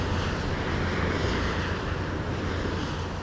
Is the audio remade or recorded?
recorded